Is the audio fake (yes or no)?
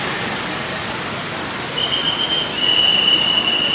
no